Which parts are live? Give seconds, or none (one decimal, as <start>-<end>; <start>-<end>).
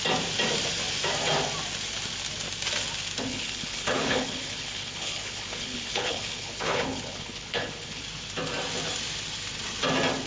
0.0-3.3; 8.0-10.3